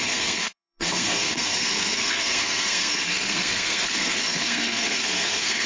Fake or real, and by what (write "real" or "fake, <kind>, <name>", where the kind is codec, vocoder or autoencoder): fake, codec, SNAC